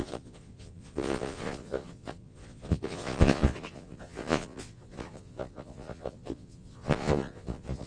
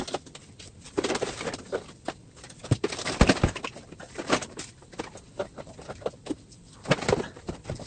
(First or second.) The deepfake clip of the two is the first